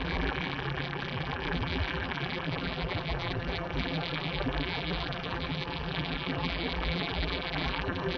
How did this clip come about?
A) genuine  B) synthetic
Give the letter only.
B